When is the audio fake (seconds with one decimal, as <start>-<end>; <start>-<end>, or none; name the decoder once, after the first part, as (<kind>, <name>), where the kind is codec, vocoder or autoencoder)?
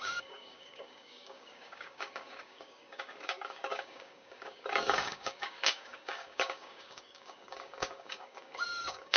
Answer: 0.0-9.2 (codec, DAC)